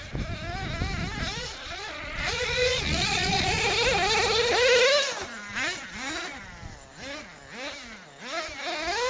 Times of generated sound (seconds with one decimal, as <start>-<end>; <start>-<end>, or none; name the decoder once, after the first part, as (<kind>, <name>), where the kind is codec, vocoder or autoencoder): 1.4-3.6 (vocoder, Vocos)